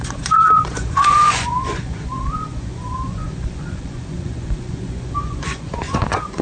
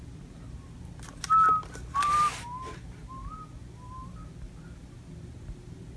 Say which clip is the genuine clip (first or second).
second